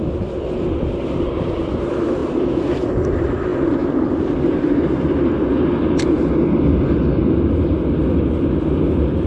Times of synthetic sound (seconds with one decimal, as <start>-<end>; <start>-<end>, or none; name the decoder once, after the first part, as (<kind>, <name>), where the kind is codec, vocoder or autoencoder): none